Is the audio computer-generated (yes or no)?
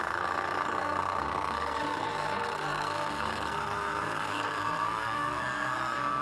yes